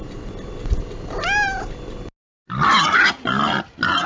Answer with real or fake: real